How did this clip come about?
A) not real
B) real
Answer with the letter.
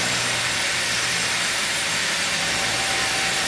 A